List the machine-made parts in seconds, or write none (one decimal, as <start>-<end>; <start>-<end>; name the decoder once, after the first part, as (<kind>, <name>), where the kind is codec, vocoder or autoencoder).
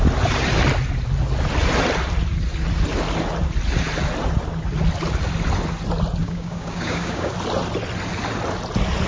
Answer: 6.2-7.3 (codec, DAC)